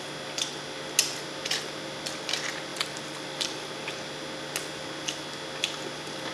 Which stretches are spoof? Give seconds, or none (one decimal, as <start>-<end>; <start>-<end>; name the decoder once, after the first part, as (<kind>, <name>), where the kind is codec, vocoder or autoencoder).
2.7-3.7 (vocoder, BigVGAN v2)